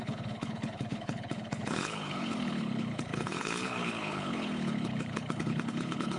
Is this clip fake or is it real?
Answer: fake